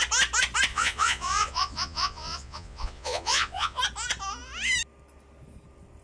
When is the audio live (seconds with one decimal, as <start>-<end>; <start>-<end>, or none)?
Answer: 0.0-0.7; 3.8-6.0